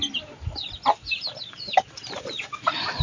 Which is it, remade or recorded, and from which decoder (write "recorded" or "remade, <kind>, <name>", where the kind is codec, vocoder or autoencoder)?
recorded